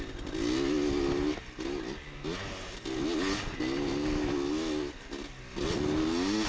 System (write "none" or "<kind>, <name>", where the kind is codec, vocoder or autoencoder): none